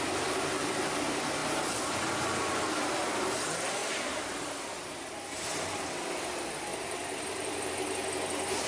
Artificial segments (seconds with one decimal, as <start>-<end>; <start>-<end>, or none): 3.8-4.5; 6.7-7.7